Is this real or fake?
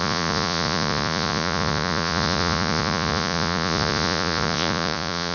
fake